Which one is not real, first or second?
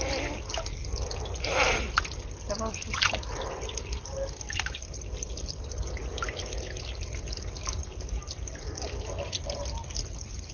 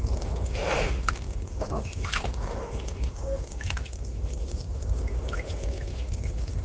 second